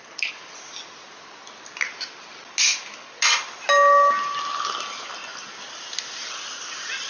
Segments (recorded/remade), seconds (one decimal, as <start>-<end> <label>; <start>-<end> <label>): 0.0-7.1 recorded